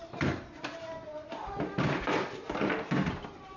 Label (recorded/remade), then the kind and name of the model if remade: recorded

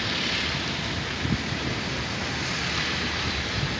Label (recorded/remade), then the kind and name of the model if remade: remade, vocoder, BigVGAN v2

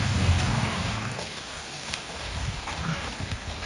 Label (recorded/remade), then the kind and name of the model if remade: remade, codec, DAC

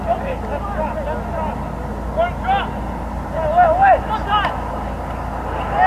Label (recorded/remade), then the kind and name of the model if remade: recorded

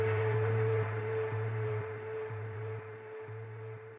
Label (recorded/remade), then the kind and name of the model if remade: remade, vocoder, BigVGAN v2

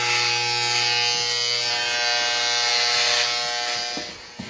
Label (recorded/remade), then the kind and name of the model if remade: recorded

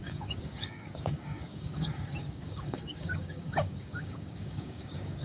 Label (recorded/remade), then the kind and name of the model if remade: remade, codec, DAC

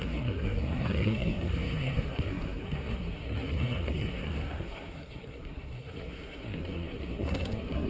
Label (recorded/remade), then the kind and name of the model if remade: remade, codec, SNAC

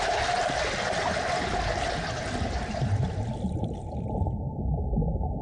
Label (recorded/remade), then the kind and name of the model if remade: recorded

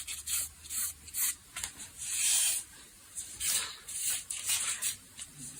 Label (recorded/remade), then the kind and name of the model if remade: remade, vocoder, BigVGAN v2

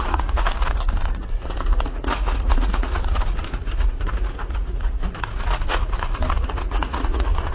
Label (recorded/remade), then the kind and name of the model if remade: remade, vocoder, Vocos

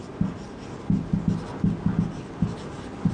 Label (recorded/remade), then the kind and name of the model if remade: recorded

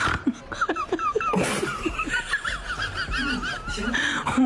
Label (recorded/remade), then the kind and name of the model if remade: remade, vocoder, BigVGAN v2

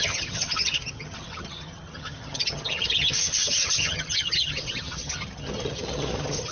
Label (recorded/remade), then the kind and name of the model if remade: remade, vocoder, HiFi-GAN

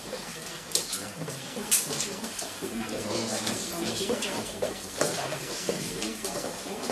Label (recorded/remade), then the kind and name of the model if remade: remade, codec, SNAC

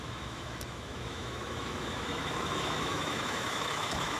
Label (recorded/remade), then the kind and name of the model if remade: remade, autoencoder, DAC-VAE